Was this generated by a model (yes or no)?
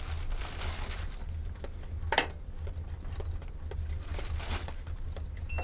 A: no